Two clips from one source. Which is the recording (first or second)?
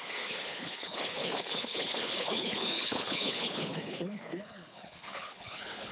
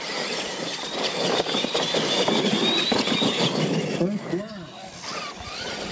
second